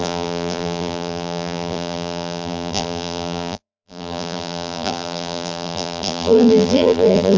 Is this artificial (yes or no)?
yes